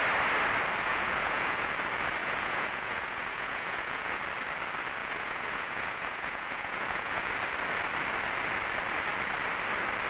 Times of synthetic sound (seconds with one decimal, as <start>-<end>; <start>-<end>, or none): 0.9-1.7; 2.2-4.2; 5.0-7.3